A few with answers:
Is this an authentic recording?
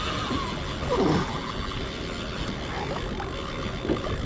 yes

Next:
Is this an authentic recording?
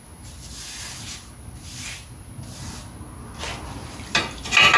yes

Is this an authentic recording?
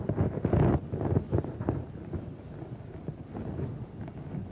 yes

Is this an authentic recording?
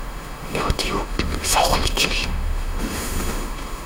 no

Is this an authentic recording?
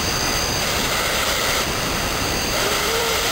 no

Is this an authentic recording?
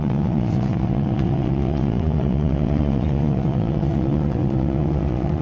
no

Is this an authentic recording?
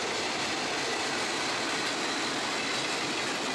yes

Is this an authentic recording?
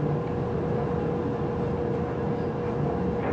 yes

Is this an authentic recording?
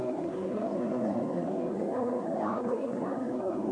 no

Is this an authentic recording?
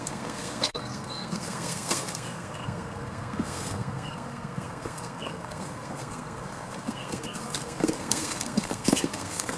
no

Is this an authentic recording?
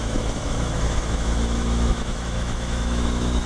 no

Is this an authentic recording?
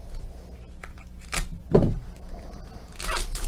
yes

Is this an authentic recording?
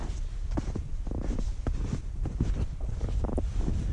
yes